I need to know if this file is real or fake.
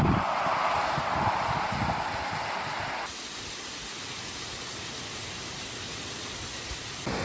real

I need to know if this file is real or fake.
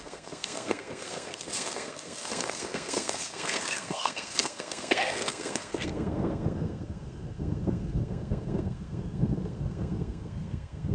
fake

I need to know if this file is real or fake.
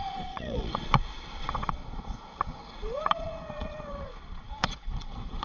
fake